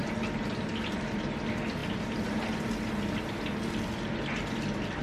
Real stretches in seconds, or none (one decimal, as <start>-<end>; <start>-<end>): 0.0-5.0